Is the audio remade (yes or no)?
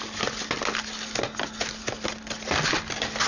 no